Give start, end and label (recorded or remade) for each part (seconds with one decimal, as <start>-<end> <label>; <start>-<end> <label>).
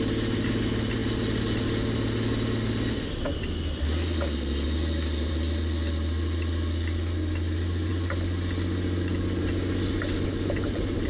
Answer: 0.0-11.1 recorded